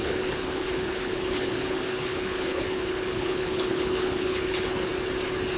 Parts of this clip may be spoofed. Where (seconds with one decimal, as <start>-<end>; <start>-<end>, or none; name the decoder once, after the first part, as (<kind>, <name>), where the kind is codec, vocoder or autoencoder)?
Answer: 0.0-4.9 (codec, HILCodec)